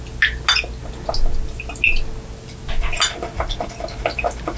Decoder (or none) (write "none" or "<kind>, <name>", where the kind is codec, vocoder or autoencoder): none